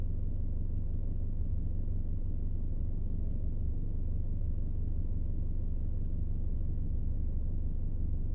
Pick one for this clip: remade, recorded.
recorded